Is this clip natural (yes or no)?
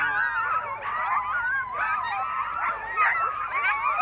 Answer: yes